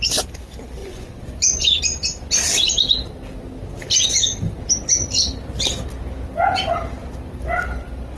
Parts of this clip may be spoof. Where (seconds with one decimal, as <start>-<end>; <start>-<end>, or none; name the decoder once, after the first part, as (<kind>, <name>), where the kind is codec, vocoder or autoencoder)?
0.8-1.8 (vocoder, Vocos)